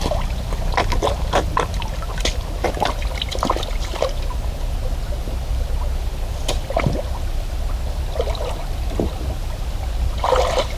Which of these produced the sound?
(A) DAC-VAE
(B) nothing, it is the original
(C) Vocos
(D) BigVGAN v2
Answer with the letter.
B